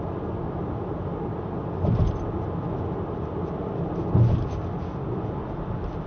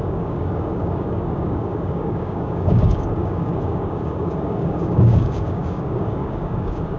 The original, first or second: first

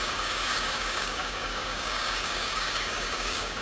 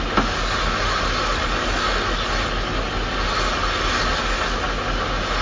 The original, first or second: second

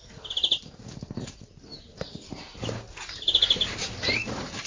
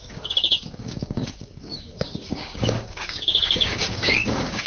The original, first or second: first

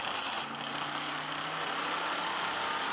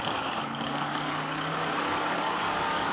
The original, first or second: first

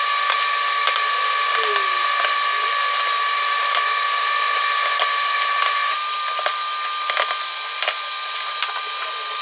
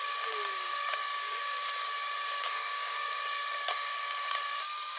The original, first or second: first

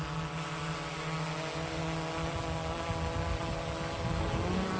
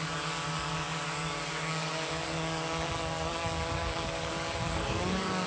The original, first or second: first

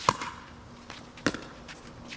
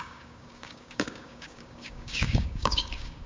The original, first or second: first